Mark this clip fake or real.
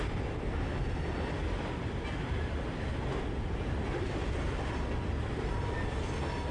real